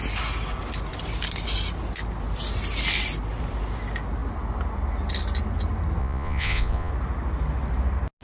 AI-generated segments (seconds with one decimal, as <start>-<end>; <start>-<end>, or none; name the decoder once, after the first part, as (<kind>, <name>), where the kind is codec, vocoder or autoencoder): 6.0-6.9 (vocoder, Vocos)